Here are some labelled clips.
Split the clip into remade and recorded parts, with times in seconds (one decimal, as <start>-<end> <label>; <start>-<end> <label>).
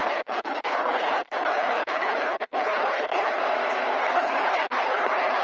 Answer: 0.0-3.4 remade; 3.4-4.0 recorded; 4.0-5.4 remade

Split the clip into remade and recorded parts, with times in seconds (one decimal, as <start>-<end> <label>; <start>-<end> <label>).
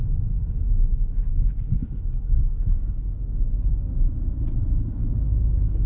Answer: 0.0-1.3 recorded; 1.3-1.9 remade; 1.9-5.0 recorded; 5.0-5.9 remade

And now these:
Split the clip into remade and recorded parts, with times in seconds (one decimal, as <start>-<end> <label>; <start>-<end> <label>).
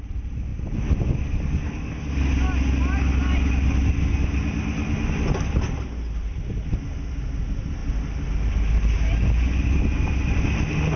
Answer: 0.0-11.0 recorded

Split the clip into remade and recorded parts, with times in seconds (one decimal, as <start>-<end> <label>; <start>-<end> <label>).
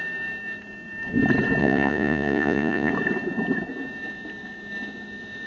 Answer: 0.0-1.6 recorded; 1.6-2.9 remade; 2.9-5.5 recorded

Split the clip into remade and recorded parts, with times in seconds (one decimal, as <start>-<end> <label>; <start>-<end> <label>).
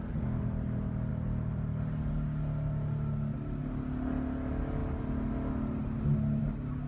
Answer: 0.0-6.9 recorded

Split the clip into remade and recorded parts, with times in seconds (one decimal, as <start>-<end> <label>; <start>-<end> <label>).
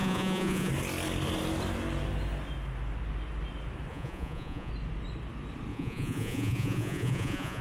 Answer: 0.0-0.7 remade; 0.7-3.9 recorded; 3.9-4.7 remade; 4.7-5.7 recorded; 5.7-7.6 remade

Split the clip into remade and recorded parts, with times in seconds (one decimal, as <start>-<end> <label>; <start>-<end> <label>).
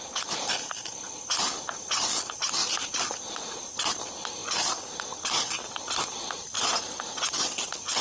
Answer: 0.0-4.4 remade; 4.4-7.0 recorded; 7.0-8.0 remade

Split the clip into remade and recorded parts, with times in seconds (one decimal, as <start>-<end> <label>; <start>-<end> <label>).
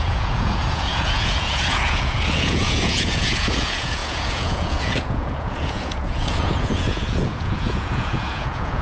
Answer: 0.0-8.8 remade